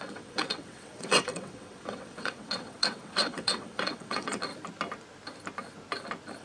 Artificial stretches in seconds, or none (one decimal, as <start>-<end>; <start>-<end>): 0.0-4.5